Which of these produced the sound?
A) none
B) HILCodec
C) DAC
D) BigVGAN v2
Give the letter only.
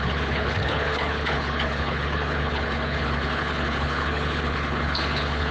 B